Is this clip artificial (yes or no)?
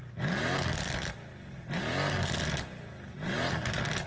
no